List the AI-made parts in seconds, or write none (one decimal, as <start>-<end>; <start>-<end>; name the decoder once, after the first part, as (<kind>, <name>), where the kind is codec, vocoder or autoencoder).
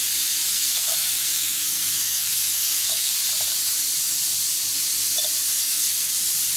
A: 0.5-3.1 (codec, SNAC); 5.5-6.1